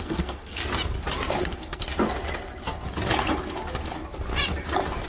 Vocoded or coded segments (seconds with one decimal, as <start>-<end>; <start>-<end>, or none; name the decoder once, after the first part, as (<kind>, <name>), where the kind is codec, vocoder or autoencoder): 0.0-0.6 (codec, SNAC); 1.4-1.8